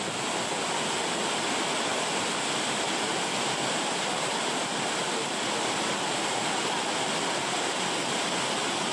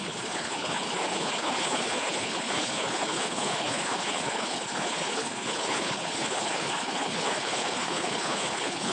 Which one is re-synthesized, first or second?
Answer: second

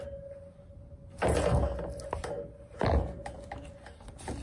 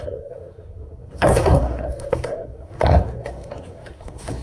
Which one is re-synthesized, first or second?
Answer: second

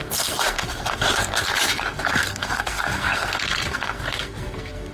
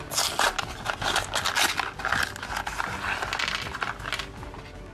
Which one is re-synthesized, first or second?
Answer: first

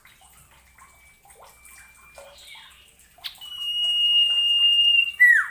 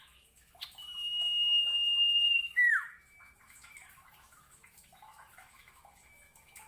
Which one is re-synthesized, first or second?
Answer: second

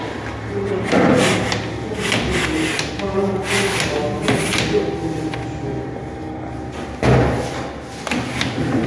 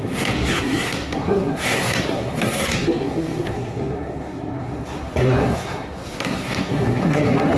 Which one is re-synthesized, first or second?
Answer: second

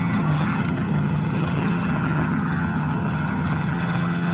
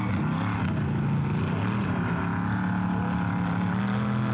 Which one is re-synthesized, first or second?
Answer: first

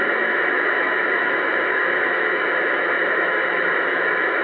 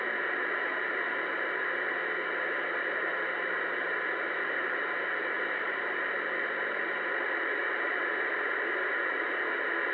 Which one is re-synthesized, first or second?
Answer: first